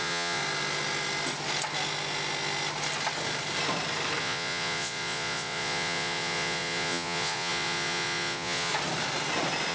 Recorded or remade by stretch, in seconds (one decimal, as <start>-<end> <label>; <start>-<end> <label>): 0.0-0.4 remade; 0.4-4.2 recorded; 4.2-8.7 remade; 8.7-9.7 recorded